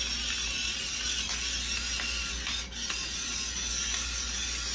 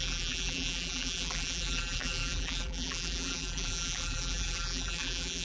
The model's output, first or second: second